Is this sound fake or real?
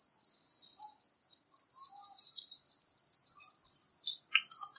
real